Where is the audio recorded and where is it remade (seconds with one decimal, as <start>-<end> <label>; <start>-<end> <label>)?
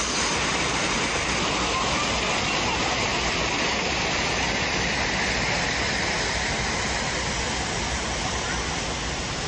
0.0-9.5 recorded